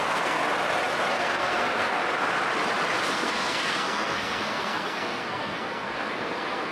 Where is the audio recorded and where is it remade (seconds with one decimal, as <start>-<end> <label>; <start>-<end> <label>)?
0.0-0.4 remade; 0.4-1.1 recorded; 1.1-2.0 remade; 2.0-3.1 recorded; 3.1-6.7 remade